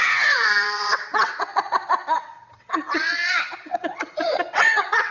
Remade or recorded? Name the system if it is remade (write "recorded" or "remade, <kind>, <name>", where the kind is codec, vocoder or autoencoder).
remade, vocoder, WaveNeXt